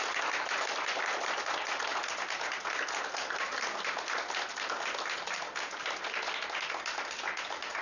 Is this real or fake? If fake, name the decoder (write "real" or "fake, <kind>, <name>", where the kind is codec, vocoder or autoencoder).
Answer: real